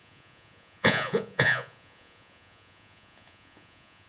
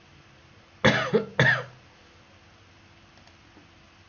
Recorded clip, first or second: second